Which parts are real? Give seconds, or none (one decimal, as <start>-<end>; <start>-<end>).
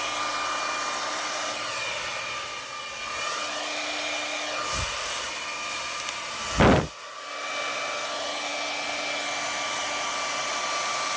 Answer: 0.0-11.2